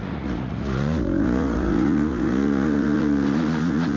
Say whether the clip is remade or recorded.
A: remade